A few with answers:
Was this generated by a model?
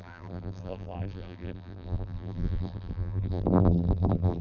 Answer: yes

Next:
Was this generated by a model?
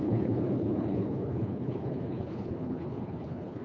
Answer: yes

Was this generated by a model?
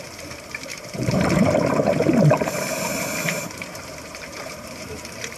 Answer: yes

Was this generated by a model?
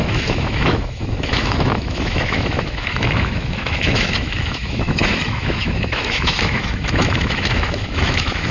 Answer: yes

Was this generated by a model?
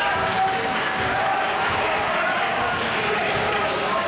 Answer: yes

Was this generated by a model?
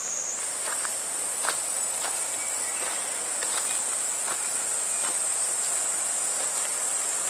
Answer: no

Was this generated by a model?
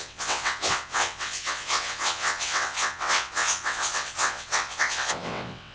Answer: yes